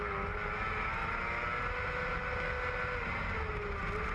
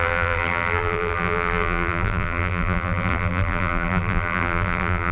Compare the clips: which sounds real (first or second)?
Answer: first